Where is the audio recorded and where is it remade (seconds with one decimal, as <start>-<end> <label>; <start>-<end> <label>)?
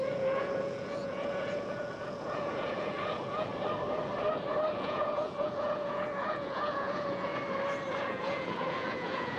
0.0-3.5 remade; 3.5-4.7 recorded; 4.7-7.3 remade; 7.3-8.0 recorded; 8.0-9.4 remade